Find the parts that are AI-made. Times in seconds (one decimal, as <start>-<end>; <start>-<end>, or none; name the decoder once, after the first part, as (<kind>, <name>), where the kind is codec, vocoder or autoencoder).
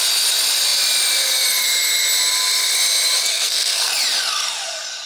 3.3-3.9 (codec, SNAC)